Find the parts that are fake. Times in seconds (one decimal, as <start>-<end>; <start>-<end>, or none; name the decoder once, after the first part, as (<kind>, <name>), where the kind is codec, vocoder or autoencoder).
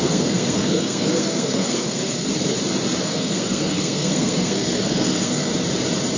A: 0.0-2.3 (codec, SNAC); 3.0-5.5